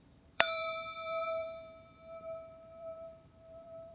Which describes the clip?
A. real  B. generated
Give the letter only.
B